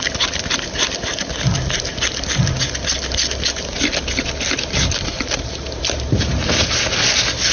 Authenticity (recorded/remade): recorded